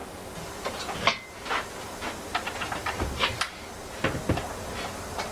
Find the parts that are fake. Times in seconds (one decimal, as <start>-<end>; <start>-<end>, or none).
none